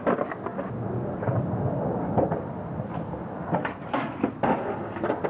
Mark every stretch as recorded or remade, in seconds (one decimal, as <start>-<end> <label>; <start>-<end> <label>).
0.0-5.3 recorded